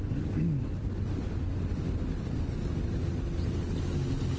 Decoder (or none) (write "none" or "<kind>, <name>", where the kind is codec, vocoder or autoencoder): none